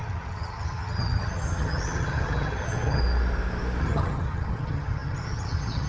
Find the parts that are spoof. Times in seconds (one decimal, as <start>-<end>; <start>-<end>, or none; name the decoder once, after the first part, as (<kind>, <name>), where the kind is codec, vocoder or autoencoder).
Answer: 0.0-3.0 (vocoder, HiFi-GAN); 3.8-5.9

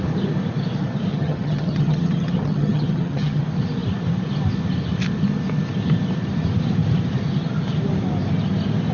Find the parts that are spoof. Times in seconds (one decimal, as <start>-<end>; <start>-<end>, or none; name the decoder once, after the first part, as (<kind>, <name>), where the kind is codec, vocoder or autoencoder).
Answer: 1.1-3.4 (vocoder, HiFi-GAN)

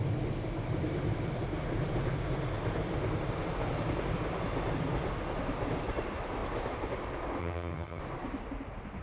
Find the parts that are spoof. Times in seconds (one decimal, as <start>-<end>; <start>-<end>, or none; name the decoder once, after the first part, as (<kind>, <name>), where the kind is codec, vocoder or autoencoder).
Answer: 7.4-8.0 (vocoder, HiFi-GAN)

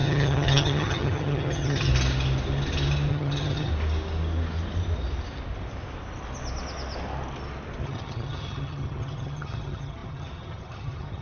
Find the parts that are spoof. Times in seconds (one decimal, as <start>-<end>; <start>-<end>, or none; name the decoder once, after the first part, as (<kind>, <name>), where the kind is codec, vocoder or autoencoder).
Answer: 0.0-1.9 (vocoder, HiFi-GAN); 3.1-3.7; 7.8-11.2

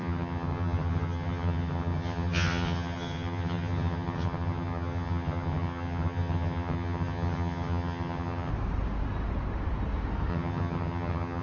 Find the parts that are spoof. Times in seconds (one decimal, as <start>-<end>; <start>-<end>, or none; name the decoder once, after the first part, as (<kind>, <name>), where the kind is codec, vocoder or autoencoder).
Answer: 0.0-8.5 (vocoder, HiFi-GAN); 10.3-11.4

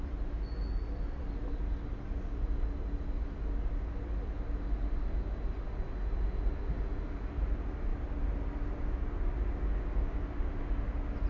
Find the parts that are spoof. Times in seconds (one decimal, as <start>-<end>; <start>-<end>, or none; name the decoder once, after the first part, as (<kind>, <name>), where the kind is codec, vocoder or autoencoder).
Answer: none

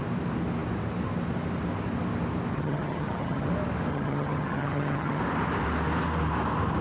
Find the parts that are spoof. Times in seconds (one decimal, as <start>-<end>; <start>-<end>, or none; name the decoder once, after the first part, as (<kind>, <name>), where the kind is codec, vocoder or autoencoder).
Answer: 2.5-3.5 (vocoder, HiFi-GAN); 3.9-5.2